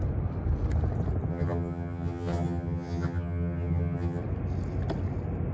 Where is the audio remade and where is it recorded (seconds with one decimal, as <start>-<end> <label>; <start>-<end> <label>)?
0.0-1.3 recorded; 1.3-4.2 remade; 4.2-5.5 recorded